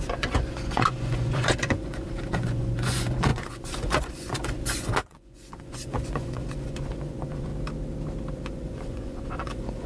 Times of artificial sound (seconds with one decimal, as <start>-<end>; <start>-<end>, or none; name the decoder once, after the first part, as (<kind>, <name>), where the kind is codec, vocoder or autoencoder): 0.0-7.5 (vocoder, Vocos); 8.3-9.9